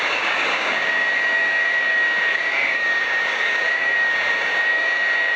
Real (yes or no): no